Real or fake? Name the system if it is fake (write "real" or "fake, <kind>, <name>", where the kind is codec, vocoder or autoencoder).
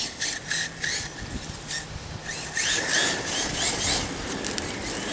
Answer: real